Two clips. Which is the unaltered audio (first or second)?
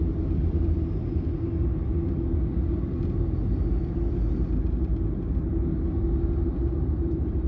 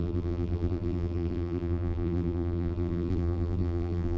first